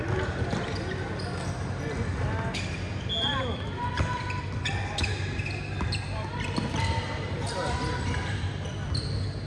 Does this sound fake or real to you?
real